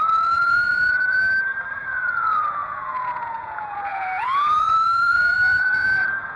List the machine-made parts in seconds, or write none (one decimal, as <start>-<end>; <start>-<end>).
0.0-1.2; 1.7-6.4